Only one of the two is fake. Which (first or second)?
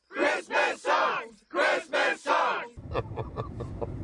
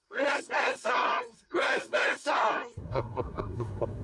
second